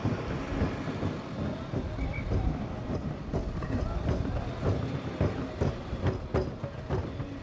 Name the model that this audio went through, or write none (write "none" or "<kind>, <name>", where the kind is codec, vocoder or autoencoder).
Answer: none